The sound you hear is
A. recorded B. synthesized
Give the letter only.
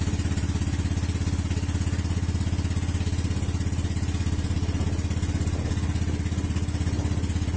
A